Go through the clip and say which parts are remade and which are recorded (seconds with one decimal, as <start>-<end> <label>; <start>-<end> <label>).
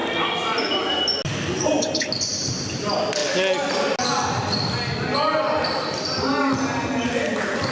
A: 0.0-7.7 recorded